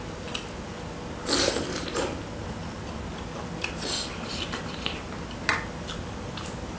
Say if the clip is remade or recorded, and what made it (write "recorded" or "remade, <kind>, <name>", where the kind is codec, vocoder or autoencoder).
recorded